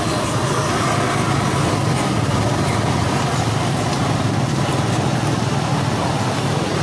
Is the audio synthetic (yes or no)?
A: no